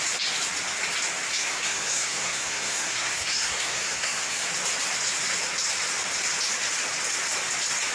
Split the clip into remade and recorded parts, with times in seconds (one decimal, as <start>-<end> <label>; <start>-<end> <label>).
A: 0.0-1.3 recorded; 1.3-4.5 remade; 4.5-7.9 recorded